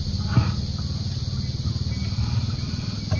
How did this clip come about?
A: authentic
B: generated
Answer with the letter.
A